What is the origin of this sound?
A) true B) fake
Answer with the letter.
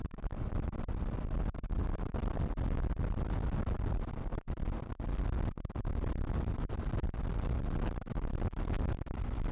A